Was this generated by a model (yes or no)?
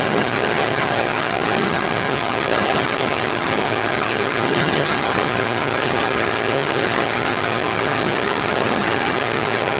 yes